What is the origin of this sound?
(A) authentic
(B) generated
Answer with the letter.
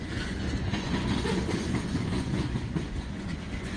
B